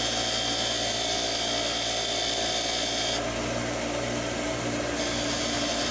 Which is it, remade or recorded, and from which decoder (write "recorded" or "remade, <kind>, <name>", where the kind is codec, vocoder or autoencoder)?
recorded